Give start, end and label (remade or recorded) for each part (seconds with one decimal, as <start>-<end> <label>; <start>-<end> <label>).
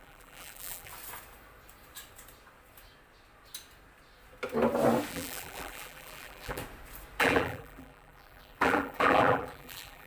0.0-0.9 remade; 0.9-5.1 recorded; 5.1-6.6 remade; 6.6-7.2 recorded; 7.2-10.1 remade